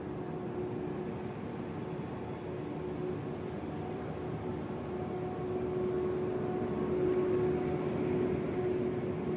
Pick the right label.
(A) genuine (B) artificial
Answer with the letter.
A